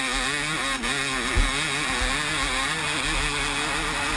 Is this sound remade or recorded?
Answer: recorded